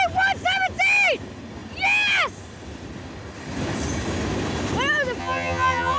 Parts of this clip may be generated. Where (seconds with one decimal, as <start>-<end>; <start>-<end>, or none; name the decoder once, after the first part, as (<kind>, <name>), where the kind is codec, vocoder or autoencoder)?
5.2-6.0 (vocoder, HiFi-GAN)